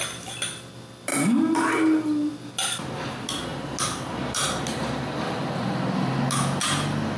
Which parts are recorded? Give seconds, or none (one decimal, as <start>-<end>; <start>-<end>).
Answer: 0.0-7.2

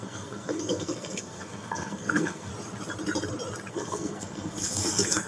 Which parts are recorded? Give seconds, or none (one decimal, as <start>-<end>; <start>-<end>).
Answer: 2.5-3.7

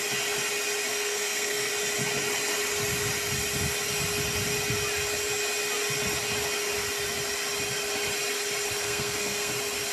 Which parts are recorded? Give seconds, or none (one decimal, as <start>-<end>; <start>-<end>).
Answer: 0.0-0.9; 1.7-8.8; 9.5-9.9

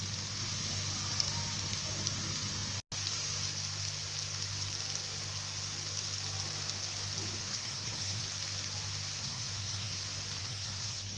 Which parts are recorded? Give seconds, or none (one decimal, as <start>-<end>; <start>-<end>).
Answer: 0.0-7.4; 8.2-9.2; 10.0-10.4

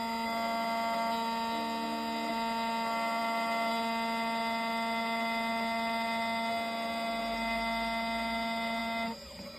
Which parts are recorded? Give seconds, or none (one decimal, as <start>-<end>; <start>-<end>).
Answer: 0.0-9.6

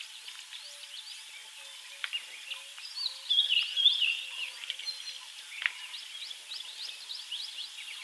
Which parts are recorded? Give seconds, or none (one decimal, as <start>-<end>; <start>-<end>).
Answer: 0.0-8.0

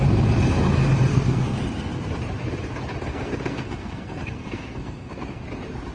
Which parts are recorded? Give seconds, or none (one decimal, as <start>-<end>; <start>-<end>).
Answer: 0.0-1.1; 1.6-3.1; 5.4-5.9

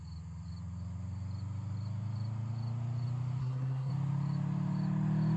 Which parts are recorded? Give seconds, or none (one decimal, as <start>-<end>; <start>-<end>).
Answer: 0.0-3.4; 3.9-5.4